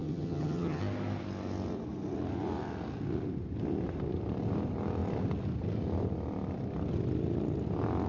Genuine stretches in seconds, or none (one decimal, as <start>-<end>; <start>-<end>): 0.8-8.1